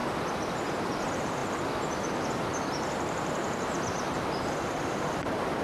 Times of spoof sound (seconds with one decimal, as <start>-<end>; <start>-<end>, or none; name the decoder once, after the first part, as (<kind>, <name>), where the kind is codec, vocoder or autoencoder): 0.7-1.4 (vocoder, BigVGAN v2); 2.0-5.6